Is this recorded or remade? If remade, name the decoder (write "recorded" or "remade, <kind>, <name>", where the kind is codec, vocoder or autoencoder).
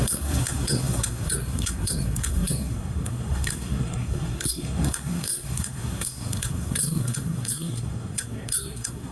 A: remade, codec, SNAC